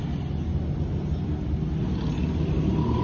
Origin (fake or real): real